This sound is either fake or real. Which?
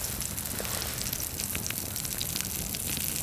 real